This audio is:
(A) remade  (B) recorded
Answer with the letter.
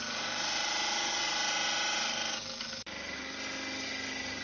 B